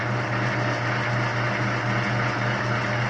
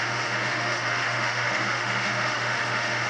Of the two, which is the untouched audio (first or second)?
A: first